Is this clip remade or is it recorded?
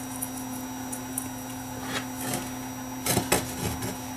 recorded